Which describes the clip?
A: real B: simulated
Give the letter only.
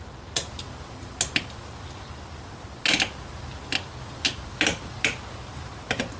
A